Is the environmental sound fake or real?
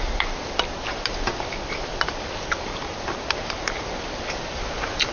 real